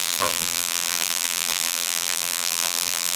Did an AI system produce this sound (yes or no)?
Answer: yes